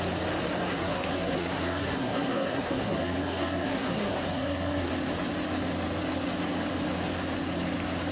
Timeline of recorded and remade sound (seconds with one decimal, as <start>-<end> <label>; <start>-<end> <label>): 0.0-0.7 recorded; 0.7-4.9 remade; 4.9-8.1 recorded